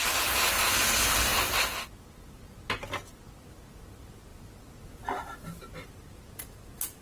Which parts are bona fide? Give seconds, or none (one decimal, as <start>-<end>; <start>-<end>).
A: 0.0-7.0